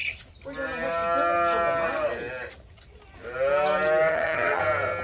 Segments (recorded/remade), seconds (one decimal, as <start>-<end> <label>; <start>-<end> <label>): 0.0-4.1 recorded; 4.1-4.6 remade; 4.6-5.0 recorded